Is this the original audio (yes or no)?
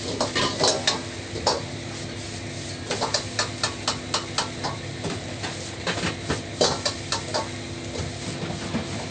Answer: yes